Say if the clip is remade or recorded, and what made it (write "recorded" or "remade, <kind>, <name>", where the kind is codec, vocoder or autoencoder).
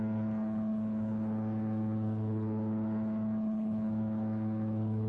remade, codec, HILCodec